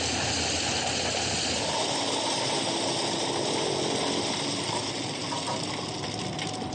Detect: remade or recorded recorded